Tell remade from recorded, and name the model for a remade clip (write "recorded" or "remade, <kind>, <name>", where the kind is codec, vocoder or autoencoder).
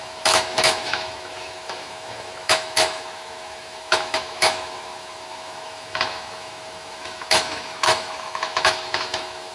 remade, autoencoder, DAC-VAE